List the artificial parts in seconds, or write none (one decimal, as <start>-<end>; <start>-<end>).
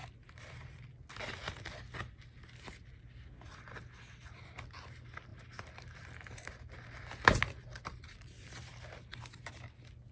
5.3-6.6; 7.9-8.6